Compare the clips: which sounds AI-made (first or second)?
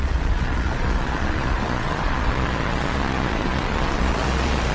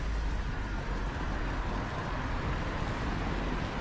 first